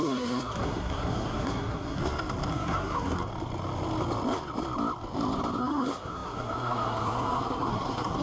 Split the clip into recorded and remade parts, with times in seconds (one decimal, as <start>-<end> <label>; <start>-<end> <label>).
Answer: 0.0-2.0 remade; 2.0-2.5 recorded; 2.5-3.3 remade; 3.3-5.6 recorded; 5.6-8.2 remade